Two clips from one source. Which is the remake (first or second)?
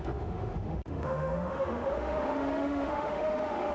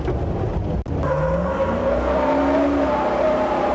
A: first